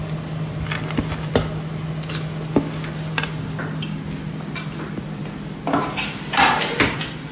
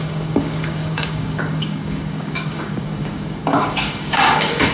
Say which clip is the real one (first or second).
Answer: first